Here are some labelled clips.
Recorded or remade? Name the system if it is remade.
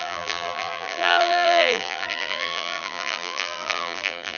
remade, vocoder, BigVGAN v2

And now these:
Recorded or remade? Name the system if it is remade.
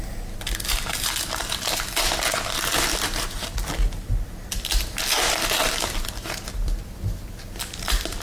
recorded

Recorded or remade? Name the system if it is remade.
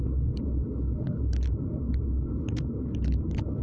recorded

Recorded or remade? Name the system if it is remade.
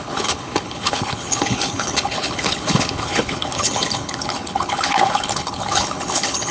remade, codec, HILCodec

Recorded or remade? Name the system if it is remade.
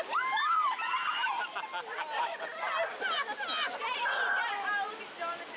recorded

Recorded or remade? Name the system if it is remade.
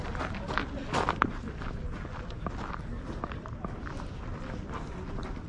recorded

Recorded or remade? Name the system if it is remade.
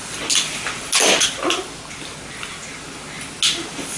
recorded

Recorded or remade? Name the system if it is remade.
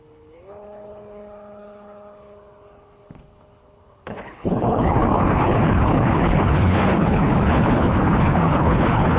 remade, codec, HILCodec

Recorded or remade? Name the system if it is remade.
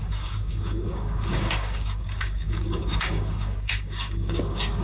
remade, codec, DAC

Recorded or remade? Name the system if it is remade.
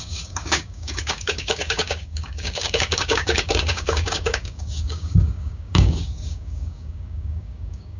remade, codec, DAC